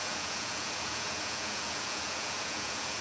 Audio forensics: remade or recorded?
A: remade